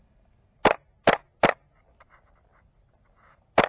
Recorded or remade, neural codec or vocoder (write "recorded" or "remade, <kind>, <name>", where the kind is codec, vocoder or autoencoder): recorded